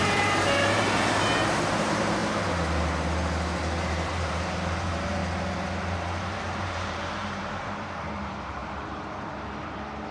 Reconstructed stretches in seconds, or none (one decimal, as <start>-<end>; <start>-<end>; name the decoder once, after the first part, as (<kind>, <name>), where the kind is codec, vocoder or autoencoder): 0.0-2.2 (vocoder, BigVGAN v2); 3.8-5.2; 6.2-10.1